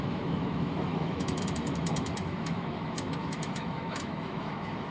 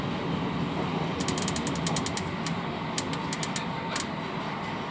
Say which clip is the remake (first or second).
first